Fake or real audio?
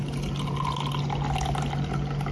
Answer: real